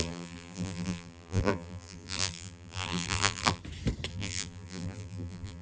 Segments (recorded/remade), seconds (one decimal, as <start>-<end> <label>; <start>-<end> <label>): 0.0-3.6 remade; 3.6-4.1 recorded; 4.1-5.6 remade